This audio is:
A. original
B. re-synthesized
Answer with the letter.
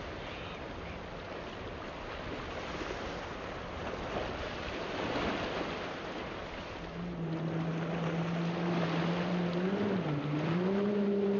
A